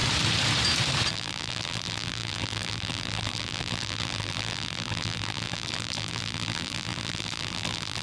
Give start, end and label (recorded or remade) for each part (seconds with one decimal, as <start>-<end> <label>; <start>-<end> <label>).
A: 0.0-1.1 recorded; 1.1-8.0 remade